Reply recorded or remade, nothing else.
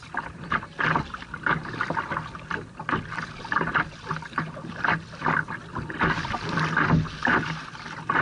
recorded